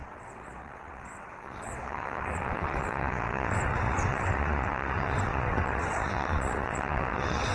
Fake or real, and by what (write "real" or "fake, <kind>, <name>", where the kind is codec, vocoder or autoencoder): fake, vocoder, WaveNeXt